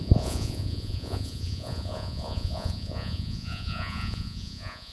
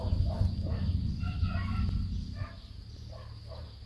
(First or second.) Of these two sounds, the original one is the second